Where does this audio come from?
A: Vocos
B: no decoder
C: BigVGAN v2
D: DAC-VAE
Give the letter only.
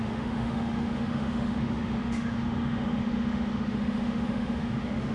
D